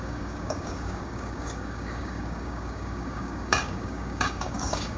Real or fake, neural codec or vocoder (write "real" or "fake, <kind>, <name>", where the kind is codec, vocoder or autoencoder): fake, codec, DAC